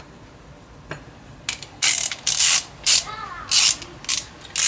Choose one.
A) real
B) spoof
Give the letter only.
A